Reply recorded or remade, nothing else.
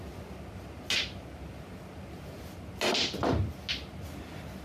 recorded